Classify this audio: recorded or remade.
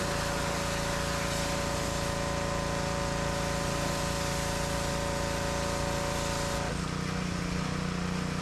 recorded